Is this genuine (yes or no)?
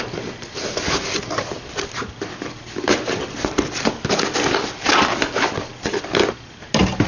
yes